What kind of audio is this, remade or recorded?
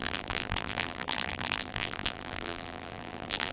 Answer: remade